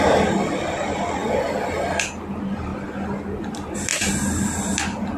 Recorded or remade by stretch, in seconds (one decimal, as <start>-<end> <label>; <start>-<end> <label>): 0.0-1.2 remade; 1.2-2.2 recorded; 2.2-2.7 remade; 2.7-3.5 recorded; 3.5-3.9 remade; 3.9-4.6 recorded; 4.6-5.2 remade